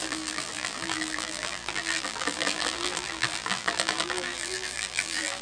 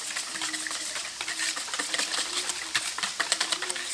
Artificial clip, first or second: first